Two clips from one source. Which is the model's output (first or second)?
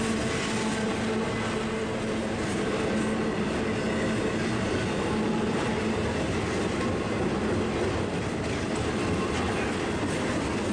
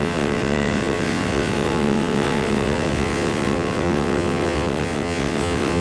second